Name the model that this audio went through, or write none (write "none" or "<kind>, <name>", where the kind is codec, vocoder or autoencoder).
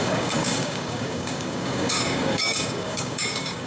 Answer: codec, DAC